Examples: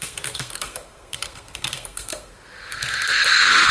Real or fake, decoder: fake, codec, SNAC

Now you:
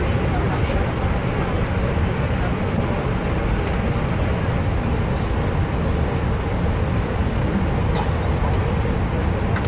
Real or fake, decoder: real